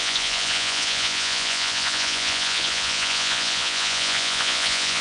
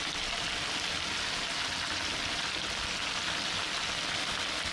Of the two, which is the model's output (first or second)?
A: first